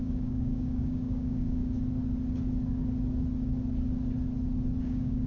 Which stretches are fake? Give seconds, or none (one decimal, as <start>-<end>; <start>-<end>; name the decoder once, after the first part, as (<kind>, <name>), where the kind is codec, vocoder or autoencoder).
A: 0.0-1.6 (codec, DAC); 4.8-5.3